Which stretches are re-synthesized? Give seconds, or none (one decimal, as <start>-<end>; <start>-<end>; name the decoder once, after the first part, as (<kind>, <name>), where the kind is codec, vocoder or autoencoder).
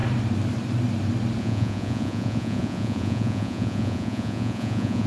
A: 1.4-5.1 (vocoder, Vocos)